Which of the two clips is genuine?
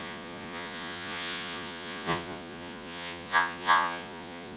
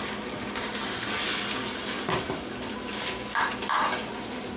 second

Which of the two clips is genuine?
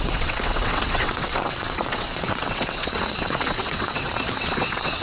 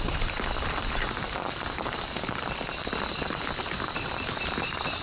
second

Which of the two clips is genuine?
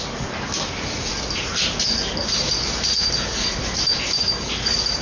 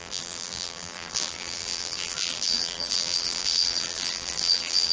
first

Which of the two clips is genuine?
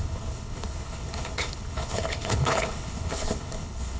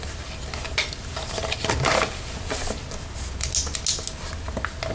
second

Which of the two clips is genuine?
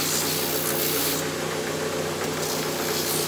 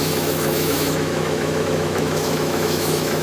first